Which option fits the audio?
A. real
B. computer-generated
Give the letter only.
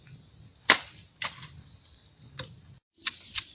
B